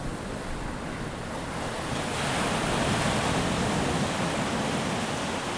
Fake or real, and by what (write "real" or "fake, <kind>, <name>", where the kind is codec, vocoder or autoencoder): real